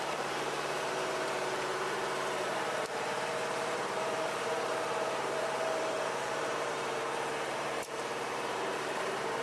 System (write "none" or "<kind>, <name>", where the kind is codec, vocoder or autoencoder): vocoder, BigVGAN v2